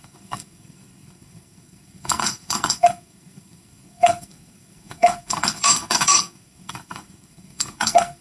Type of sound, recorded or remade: remade